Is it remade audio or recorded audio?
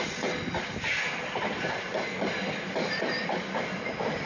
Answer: recorded